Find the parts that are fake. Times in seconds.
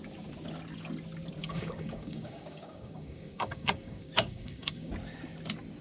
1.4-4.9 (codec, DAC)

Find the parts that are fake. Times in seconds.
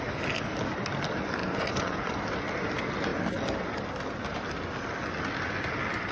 1.4-2.2 (vocoder, Vocos)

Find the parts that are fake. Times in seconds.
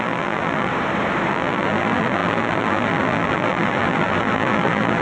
0.0-0.7 (vocoder, BigVGAN v2); 1.3-5.0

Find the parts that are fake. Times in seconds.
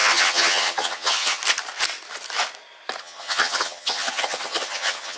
0.0-1.4 (vocoder, HiFi-GAN); 3.0-5.2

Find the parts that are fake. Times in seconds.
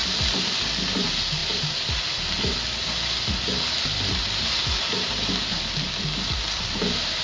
0.6-1.4 (vocoder, BigVGAN v2); 5.7-7.2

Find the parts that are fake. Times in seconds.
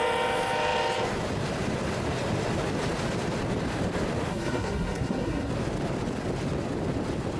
4.3-5.5 (codec, SNAC)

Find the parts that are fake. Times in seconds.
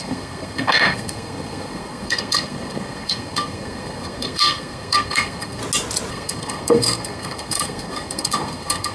0.0-5.6 (codec, SNAC); 6.1-8.9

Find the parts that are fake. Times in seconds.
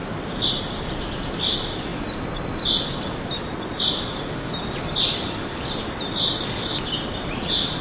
none